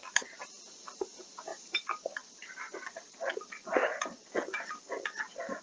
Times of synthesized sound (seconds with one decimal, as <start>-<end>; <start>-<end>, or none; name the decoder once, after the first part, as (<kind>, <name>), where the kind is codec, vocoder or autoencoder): 0.0-0.6 (vocoder, BigVGAN v2); 1.5-3.3

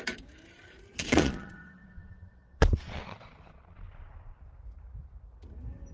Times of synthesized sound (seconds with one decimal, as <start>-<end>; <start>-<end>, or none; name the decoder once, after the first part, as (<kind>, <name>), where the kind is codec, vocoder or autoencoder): 0.9-4.4 (vocoder, Vocos)

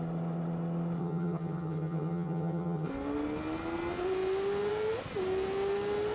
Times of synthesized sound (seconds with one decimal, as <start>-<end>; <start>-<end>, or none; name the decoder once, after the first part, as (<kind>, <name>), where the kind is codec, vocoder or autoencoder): 1.0-2.9 (vocoder, HiFi-GAN)

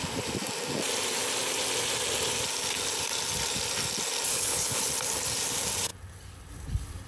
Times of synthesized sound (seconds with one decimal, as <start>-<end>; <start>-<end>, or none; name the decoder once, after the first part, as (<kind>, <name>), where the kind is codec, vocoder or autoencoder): 4.3-4.8 (codec, HILCodec)

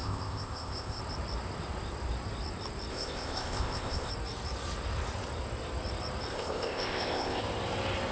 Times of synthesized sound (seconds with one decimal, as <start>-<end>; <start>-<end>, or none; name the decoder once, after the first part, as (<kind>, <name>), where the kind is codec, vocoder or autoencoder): 0.0-1.0 (codec, ZipCodec); 2.9-4.1; 6.3-7.4

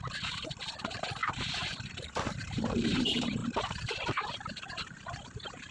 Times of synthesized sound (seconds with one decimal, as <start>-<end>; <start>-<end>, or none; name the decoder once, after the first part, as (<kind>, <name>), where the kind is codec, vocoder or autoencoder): 0.0-5.7 (vocoder, BigVGAN v2)